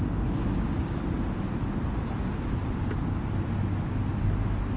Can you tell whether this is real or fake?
real